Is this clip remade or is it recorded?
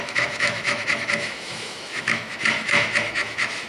remade